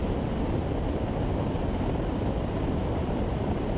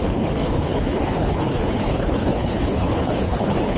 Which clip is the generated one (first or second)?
second